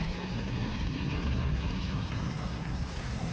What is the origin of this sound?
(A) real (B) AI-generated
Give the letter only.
B